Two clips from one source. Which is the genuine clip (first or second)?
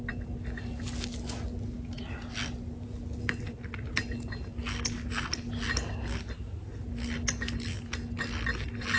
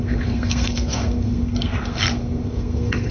first